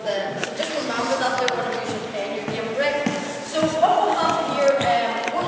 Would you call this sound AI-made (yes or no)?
no